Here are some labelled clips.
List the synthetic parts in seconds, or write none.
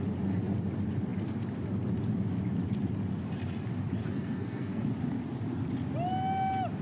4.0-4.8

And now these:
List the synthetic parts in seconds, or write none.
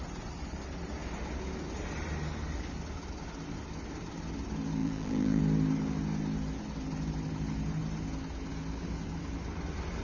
4.8-5.4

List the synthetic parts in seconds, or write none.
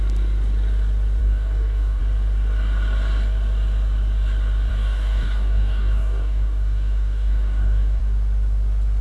1.2-2.0; 4.7-8.0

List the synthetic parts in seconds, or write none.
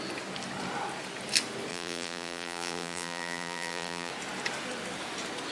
1.7-4.1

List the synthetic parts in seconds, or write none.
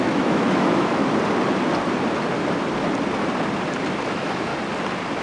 0.0-1.0; 4.1-4.5